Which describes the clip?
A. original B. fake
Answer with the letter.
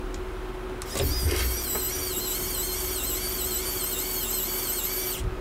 A